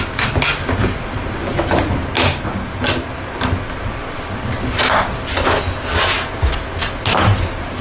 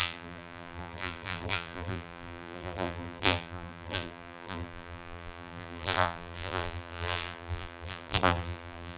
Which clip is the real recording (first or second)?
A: first